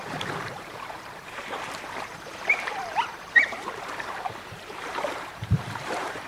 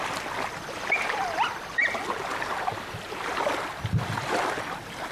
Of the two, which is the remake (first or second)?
first